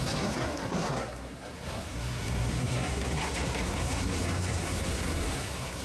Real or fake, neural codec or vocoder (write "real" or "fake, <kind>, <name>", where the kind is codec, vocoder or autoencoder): fake, codec, SNAC